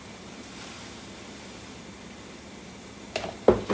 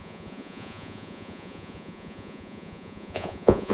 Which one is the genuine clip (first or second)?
first